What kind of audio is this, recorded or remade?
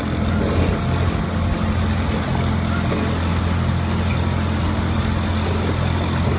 recorded